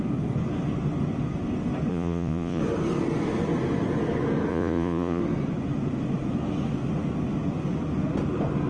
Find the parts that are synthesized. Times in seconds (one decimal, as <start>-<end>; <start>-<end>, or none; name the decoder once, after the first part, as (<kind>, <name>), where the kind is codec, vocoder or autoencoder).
1.9-2.6 (vocoder, Vocos); 4.5-5.2